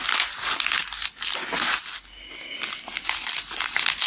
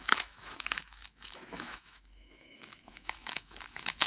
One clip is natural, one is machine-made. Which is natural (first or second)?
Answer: first